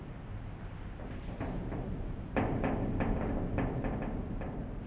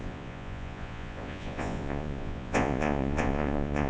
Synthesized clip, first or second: second